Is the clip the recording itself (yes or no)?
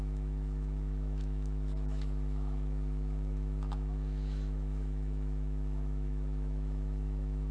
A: no